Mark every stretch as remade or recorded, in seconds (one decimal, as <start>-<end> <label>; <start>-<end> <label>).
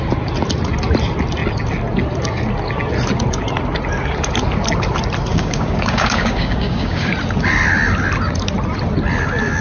0.0-5.3 recorded; 5.3-7.1 remade; 7.1-9.6 recorded